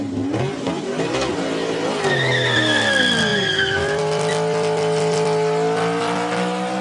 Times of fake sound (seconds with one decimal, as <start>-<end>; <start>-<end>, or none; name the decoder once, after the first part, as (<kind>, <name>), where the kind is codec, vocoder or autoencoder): none